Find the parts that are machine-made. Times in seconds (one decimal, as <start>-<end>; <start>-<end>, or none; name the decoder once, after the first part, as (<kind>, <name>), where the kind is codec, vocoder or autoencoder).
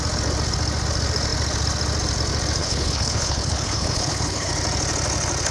2.6-4.5 (codec, HILCodec)